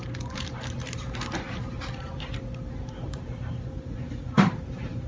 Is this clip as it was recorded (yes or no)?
no